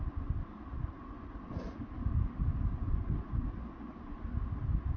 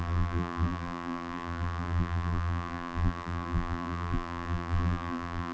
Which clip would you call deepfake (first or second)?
second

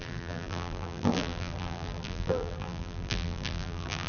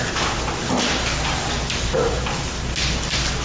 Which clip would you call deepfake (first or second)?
first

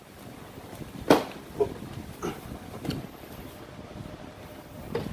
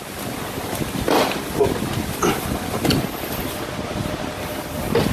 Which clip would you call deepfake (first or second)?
first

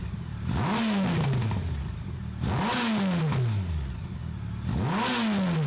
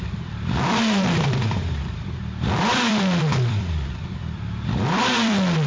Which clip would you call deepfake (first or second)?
second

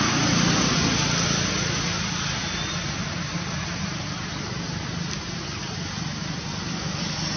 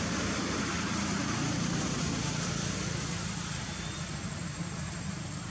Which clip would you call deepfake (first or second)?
second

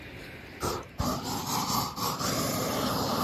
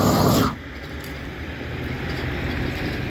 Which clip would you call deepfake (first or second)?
first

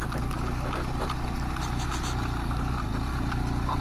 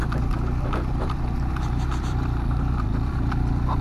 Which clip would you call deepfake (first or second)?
second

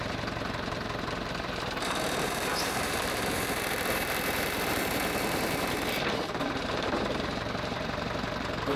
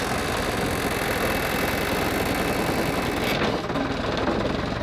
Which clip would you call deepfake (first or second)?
first